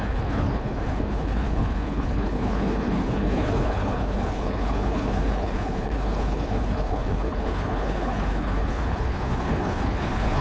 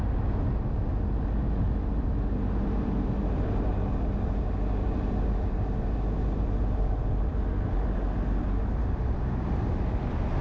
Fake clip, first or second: first